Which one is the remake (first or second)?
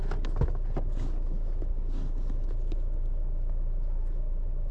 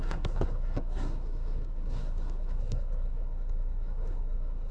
second